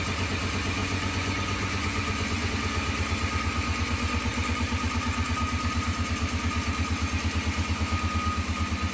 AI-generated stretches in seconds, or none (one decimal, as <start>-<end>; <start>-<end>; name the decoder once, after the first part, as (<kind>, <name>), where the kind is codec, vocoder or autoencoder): 0.8-2.5 (vocoder, Vocos)